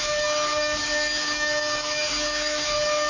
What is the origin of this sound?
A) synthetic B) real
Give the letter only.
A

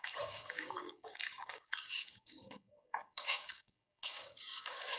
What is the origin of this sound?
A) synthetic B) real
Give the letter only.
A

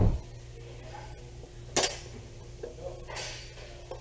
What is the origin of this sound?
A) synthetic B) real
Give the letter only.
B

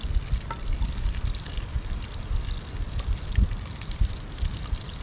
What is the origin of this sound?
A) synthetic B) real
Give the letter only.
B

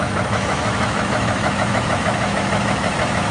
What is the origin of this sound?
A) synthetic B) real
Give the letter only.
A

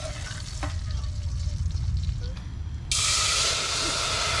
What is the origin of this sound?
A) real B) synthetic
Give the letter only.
A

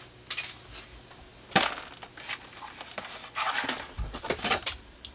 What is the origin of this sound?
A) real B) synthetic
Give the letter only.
A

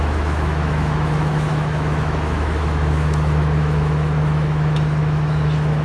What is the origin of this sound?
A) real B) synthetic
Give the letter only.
B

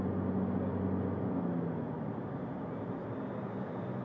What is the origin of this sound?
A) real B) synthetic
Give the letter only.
A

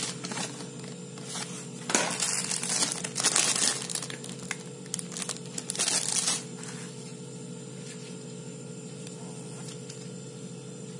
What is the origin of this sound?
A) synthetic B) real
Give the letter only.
B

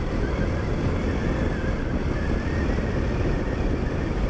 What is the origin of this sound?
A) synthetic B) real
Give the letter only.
B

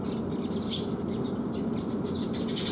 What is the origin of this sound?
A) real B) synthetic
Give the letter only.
A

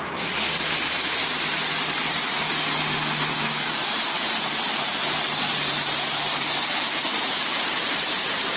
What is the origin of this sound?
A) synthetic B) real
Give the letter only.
B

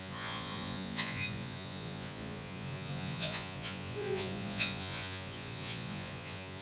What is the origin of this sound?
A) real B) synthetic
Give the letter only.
B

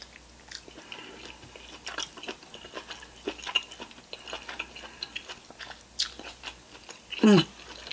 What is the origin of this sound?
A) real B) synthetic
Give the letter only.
A